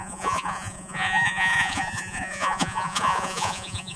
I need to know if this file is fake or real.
fake